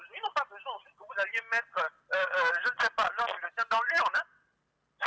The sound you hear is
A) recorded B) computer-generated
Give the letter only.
A